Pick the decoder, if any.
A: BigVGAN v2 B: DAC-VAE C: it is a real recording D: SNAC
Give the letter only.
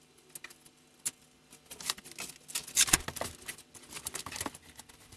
C